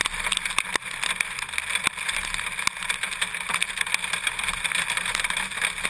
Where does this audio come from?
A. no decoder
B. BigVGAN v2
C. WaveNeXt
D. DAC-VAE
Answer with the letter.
A